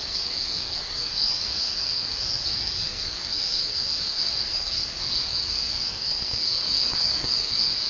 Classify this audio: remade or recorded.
remade